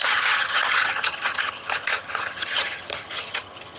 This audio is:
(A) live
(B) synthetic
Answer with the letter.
B